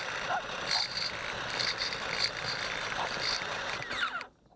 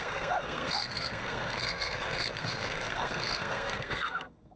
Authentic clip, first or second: first